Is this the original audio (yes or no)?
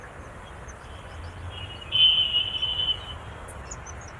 yes